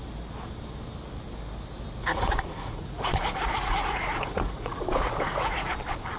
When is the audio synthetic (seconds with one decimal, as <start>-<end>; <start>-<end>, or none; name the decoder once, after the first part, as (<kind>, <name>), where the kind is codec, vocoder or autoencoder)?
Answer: 2.0-5.7 (vocoder, Vocos)